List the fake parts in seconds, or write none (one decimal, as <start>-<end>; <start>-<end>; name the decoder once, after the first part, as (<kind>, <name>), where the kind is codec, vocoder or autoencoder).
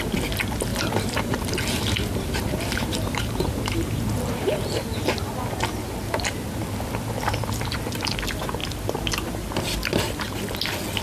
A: 0.7-5.3 (vocoder, BigVGAN v2)